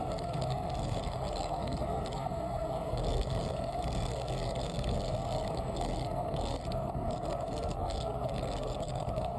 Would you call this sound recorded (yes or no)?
no